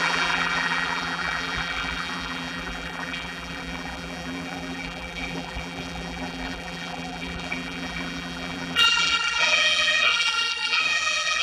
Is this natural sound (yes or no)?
no